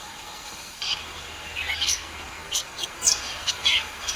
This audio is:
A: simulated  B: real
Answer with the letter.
A